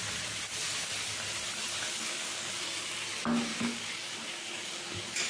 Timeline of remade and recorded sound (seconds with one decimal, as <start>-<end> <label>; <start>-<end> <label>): 0.0-1.8 recorded; 1.8-2.6 remade; 2.6-3.5 recorded; 3.5-5.3 remade